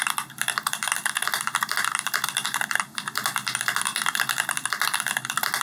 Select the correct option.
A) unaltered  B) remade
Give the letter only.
A